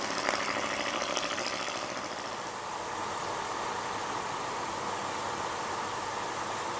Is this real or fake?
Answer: real